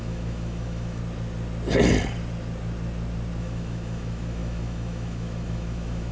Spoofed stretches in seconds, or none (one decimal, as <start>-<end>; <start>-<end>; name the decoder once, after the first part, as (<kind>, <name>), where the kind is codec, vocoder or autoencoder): 0.0-1.0 (autoencoder, DAC-VAE); 3.4-6.1